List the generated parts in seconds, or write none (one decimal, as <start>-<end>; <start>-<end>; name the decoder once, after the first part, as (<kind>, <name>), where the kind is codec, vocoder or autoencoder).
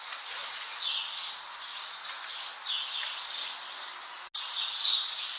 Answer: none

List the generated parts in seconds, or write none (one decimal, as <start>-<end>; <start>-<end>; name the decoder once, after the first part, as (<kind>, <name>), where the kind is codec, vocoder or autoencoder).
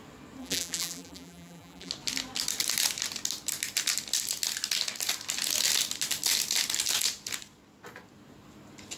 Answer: 0.4-1.9 (vocoder, BigVGAN v2)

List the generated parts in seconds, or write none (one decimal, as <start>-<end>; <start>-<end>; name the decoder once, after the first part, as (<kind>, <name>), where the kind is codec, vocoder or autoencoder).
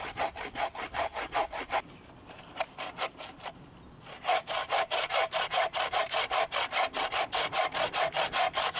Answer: 4.6-6.0 (vocoder, BigVGAN v2)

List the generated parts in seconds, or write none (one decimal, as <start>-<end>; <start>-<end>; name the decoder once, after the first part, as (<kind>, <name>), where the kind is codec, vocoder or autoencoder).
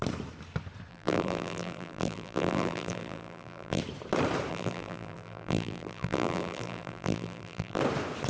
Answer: 0.9-3.8 (vocoder, BigVGAN v2); 4.5-7.8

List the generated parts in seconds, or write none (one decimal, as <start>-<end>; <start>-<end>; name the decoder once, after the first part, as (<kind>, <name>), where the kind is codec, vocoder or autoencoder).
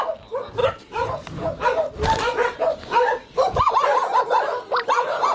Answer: 0.6-1.3 (vocoder, BigVGAN v2); 2.4-4.2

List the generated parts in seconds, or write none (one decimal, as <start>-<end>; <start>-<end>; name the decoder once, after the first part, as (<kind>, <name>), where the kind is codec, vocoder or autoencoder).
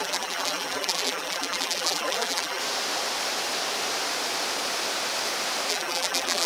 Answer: 0.0-2.6 (vocoder, BigVGAN v2); 5.7-6.5